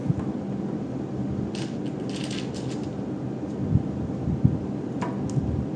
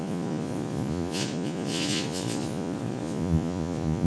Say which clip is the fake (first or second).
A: second